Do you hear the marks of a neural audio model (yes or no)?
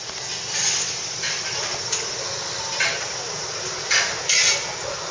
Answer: no